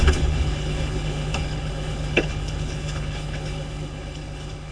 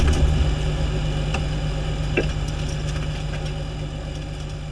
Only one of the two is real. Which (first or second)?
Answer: second